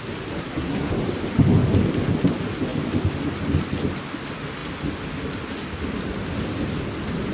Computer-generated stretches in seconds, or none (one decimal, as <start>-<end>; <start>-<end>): 0.4-0.9